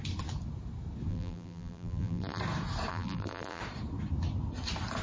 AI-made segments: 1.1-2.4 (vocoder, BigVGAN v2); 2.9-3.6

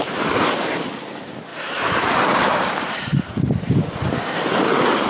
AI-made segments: 1.5-3.0 (vocoder, BigVGAN v2)

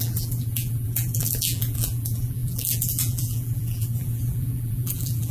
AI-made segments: 0.0-5.3 (vocoder, BigVGAN v2)

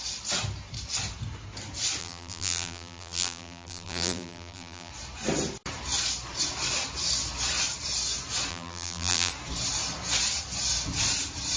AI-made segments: 2.0-4.9 (vocoder, BigVGAN v2); 8.5-9.3

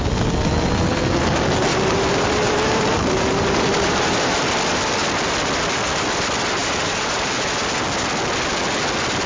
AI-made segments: 1.7-4.4 (vocoder, BigVGAN v2); 6.6-7.2

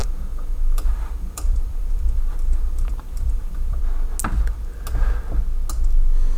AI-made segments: 0.0-3.8 (vocoder, BigVGAN v2)

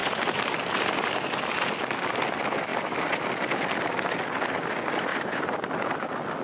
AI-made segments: 5.1-6.0 (vocoder, BigVGAN v2)